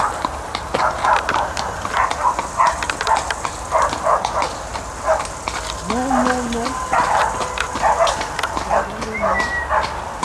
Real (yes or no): yes